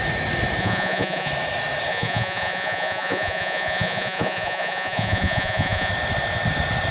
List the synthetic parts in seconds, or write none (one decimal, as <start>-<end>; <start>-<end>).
0.6-1.3; 1.9-5.9